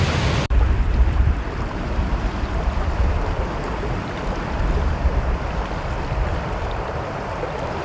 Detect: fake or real fake